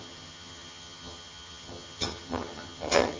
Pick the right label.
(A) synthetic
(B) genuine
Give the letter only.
A